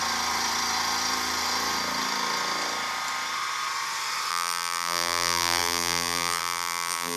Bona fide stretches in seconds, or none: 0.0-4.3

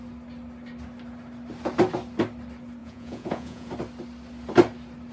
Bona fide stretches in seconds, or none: 0.0-2.8; 3.7-5.1

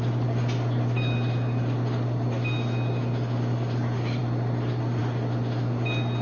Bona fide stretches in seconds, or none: 0.0-6.2